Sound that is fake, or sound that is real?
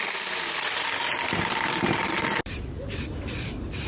fake